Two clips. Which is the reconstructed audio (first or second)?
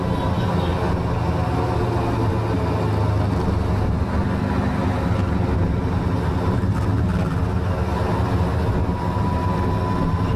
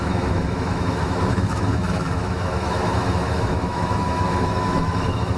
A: second